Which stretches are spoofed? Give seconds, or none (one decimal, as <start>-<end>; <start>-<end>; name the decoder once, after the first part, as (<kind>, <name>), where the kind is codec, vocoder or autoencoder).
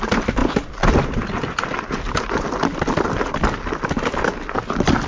0.4-3.3 (vocoder, BigVGAN v2)